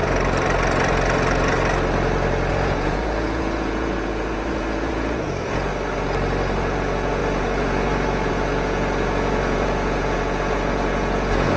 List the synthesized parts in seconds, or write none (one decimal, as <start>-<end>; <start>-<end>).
2.5-5.7; 6.6-11.6